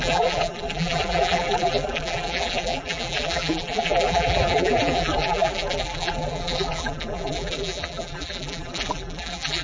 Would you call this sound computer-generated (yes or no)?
yes